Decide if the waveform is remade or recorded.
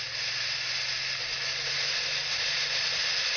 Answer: recorded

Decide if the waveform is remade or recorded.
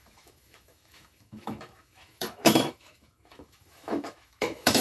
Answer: remade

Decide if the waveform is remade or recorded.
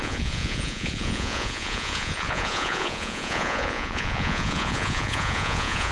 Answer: remade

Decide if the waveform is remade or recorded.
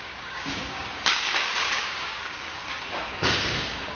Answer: remade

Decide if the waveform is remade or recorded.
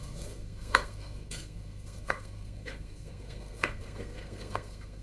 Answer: remade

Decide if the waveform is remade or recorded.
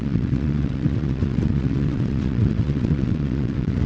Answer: remade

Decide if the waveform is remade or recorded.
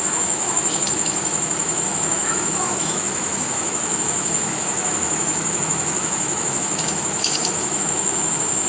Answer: remade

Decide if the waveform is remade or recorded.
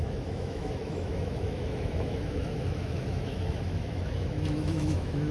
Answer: remade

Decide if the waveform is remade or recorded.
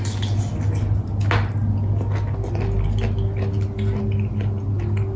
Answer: recorded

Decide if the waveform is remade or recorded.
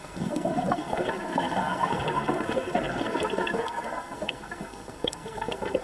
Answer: remade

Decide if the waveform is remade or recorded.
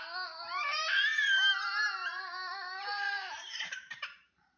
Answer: remade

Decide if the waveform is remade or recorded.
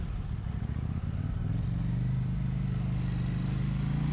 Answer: recorded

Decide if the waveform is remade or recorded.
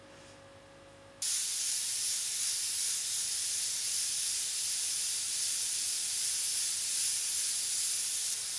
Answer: recorded